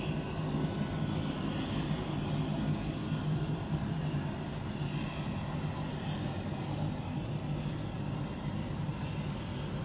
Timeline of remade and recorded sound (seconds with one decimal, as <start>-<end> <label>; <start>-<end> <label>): 0.0-3.0 recorded; 3.0-4.7 remade; 4.7-9.8 recorded